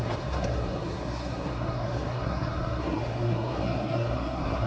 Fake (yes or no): yes